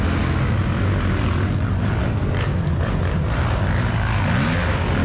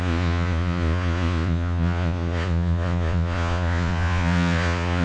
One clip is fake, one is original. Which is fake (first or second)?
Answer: second